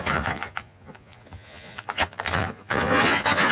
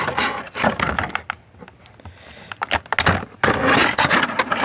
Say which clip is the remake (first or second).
first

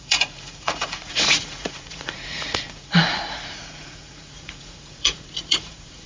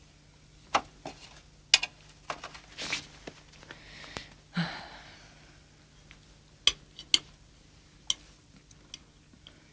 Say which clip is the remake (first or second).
first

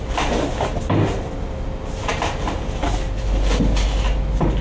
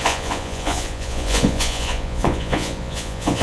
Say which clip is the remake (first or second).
second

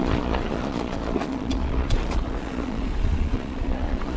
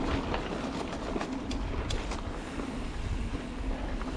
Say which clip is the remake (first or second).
first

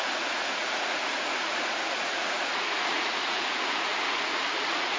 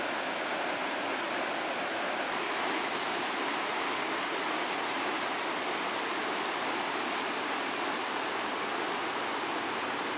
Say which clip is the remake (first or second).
first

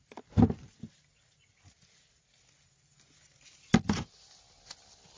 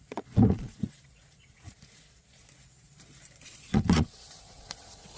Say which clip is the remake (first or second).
second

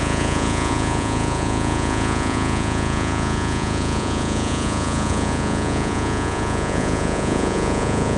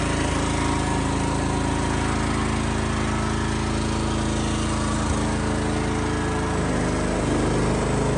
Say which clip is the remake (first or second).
first